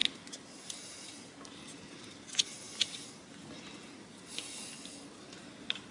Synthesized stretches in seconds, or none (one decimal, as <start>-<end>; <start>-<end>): none